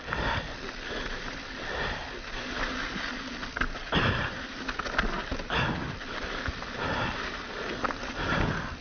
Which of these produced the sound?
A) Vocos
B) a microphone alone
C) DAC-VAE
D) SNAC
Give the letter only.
B